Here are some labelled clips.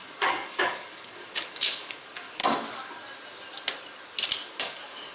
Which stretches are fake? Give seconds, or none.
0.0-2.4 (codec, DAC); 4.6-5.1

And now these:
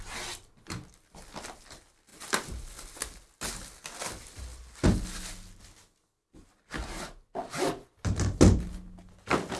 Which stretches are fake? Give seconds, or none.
none